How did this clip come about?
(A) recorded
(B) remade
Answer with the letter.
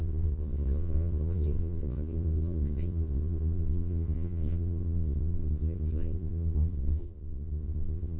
B